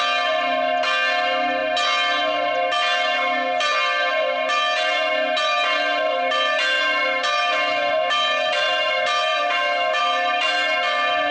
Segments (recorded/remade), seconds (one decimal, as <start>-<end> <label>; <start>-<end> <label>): 0.0-11.3 recorded